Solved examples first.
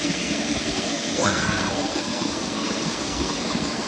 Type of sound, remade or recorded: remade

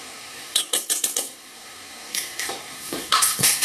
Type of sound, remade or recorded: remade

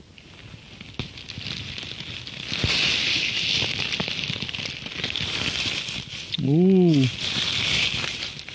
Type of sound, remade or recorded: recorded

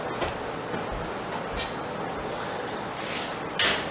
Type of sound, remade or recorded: recorded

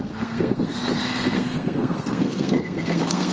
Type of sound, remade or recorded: remade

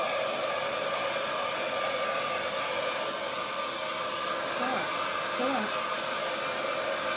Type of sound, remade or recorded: recorded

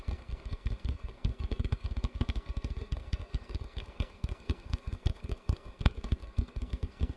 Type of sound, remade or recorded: remade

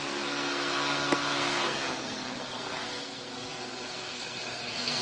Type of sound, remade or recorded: remade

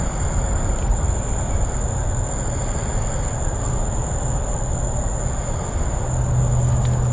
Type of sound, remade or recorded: recorded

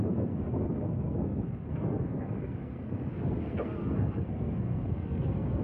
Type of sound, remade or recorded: remade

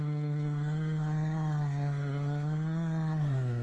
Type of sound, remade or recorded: remade